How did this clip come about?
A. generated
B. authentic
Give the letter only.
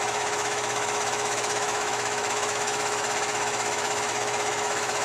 A